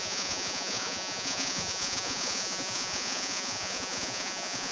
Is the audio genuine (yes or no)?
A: no